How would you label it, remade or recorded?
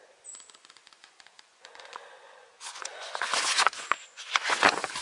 remade